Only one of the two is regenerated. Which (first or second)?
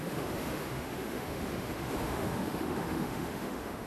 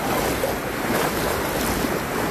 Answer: first